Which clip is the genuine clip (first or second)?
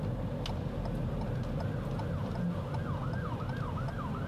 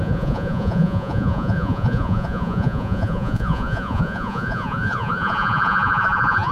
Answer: first